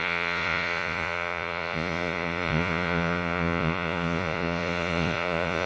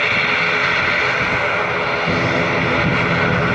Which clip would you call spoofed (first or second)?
first